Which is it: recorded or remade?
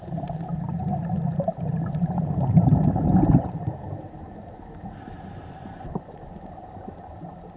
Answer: remade